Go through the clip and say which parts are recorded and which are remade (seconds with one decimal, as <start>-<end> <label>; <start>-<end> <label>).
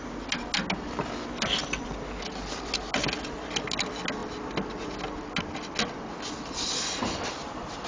0.0-7.9 recorded